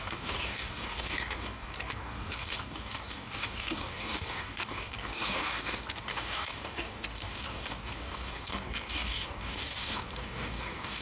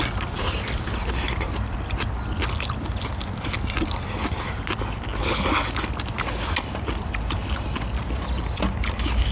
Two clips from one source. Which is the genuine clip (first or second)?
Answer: second